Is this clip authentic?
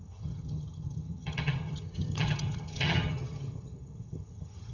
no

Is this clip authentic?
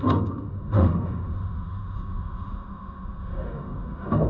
no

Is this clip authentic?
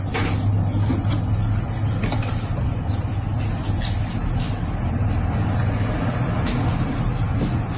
yes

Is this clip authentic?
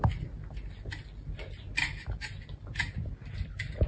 yes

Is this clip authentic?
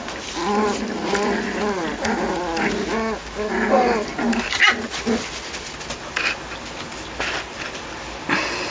yes